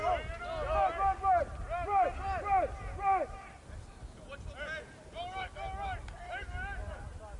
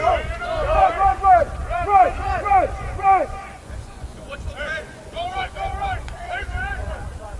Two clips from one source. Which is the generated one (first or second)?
second